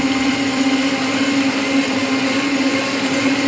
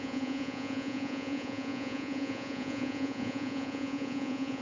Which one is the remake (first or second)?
second